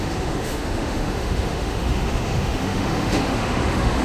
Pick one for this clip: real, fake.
fake